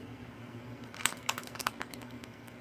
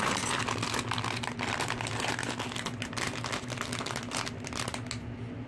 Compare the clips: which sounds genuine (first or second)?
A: second